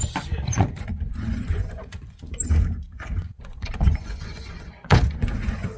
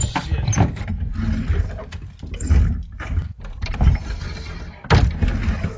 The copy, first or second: first